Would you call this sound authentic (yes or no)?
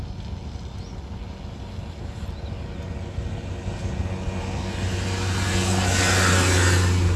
yes